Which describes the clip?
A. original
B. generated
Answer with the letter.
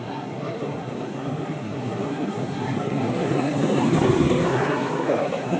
B